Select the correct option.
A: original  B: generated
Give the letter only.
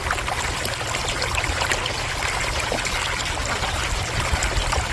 A